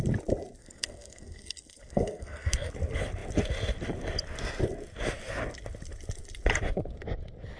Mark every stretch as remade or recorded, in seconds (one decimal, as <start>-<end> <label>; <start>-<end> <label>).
0.0-0.6 recorded; 0.6-2.7 remade; 2.7-7.6 recorded